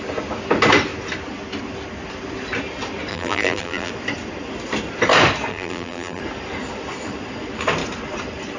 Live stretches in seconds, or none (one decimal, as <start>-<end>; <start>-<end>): 0.0-3.1; 3.9-5.5; 6.2-8.6